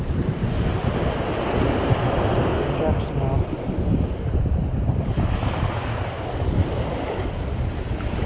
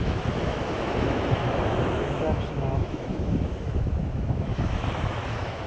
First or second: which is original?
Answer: first